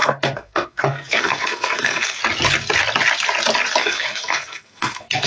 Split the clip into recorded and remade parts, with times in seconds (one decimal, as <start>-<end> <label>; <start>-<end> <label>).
0.0-2.2 remade; 2.2-3.8 recorded; 3.8-5.3 remade